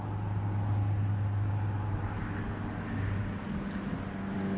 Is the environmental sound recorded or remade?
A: recorded